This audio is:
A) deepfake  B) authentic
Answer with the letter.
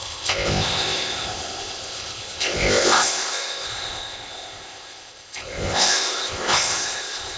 A